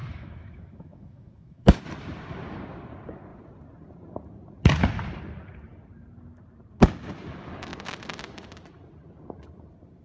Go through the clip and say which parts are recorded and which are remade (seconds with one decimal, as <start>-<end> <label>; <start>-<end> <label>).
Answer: 0.0-1.8 remade; 1.8-10.0 recorded